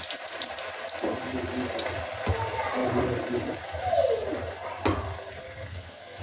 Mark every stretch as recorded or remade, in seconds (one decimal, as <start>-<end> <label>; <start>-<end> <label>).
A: 0.0-5.4 recorded; 5.4-6.2 remade